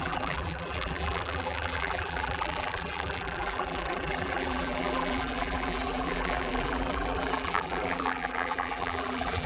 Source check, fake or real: fake